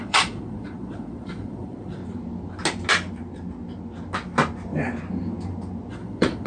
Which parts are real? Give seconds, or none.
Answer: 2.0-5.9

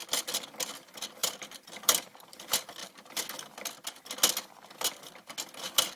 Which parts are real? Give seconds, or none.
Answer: 0.0-1.2; 2.3-6.0